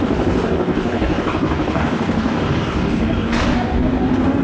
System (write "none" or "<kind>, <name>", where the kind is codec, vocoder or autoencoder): codec, DAC